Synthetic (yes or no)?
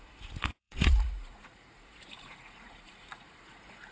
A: yes